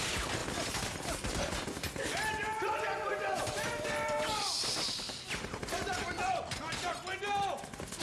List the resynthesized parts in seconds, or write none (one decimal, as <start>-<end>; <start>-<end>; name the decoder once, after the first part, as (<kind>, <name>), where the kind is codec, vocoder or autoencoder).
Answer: 3.1-8.0 (vocoder, BigVGAN v2)